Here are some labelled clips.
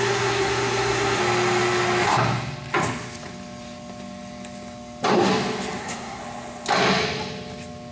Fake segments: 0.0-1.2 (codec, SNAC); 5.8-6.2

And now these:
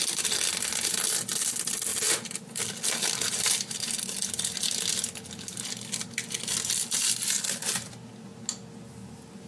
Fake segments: none

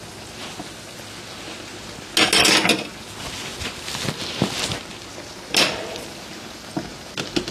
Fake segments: none